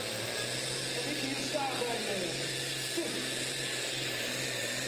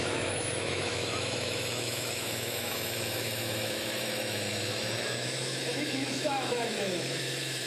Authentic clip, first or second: first